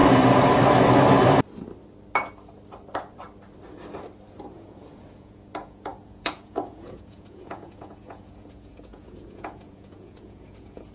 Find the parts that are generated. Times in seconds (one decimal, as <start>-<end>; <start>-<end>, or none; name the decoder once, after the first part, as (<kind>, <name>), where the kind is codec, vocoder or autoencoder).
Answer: 4.5-10.9 (vocoder, Vocos)